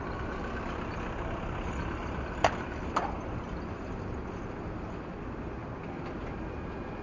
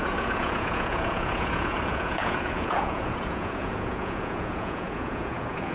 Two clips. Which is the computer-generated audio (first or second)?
second